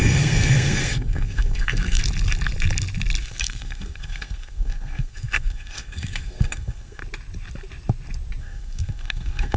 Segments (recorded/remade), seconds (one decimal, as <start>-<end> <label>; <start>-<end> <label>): 0.0-2.0 remade; 2.0-3.2 recorded; 3.2-7.0 remade; 7.0-8.4 recorded; 8.4-9.6 remade